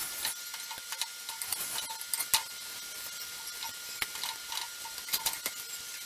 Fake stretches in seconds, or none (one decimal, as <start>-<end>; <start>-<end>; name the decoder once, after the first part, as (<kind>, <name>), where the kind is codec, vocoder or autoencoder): none